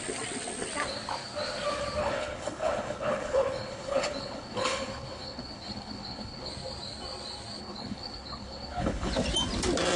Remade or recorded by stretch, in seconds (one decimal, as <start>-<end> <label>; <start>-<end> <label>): 0.0-2.0 recorded; 2.0-6.5 remade; 6.5-7.6 recorded; 7.6-9.1 remade; 9.1-10.0 recorded